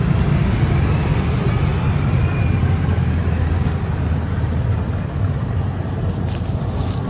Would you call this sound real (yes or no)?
yes